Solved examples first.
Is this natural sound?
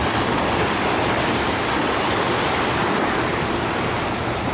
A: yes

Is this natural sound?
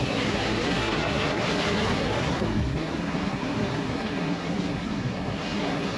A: no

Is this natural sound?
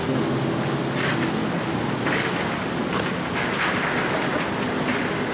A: yes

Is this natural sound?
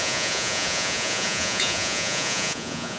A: no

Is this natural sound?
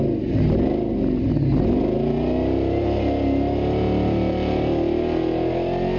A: yes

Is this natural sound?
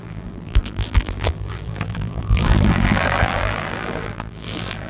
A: no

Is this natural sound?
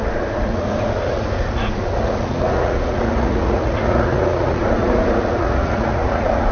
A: no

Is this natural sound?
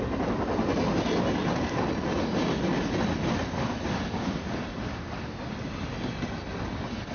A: yes